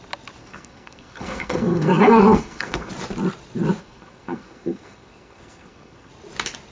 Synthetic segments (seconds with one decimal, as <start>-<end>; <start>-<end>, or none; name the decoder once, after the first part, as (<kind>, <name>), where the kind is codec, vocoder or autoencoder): 0.4-2.9 (codec, SNAC); 3.8-6.1